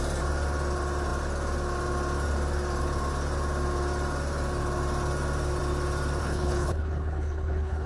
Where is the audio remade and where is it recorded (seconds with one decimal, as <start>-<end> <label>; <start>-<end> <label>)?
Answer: 0.0-6.2 recorded; 6.2-7.9 remade